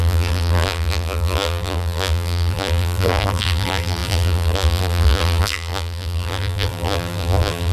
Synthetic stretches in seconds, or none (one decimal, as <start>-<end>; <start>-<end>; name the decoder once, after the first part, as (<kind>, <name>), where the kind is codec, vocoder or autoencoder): 0.0-7.7 (vocoder, BigVGAN v2)